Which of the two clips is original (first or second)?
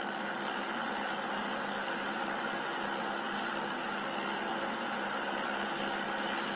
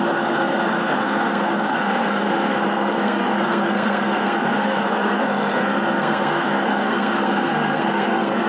first